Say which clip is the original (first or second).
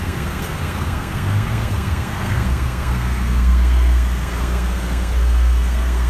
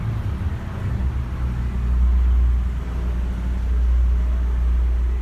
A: second